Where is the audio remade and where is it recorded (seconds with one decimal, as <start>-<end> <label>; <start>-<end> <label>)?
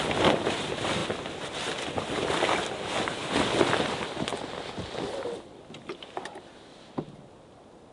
0.0-7.9 recorded